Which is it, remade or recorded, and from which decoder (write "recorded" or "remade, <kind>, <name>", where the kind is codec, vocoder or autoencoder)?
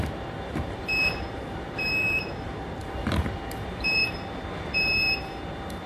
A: remade, vocoder, BigVGAN v2